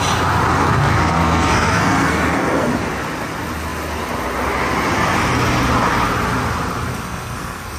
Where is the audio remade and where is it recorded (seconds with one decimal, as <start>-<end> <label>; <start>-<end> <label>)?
0.0-0.6 recorded; 0.6-2.7 remade; 2.7-6.9 recorded; 6.9-7.8 remade